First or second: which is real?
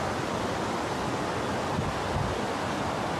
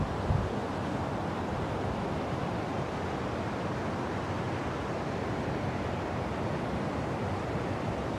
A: second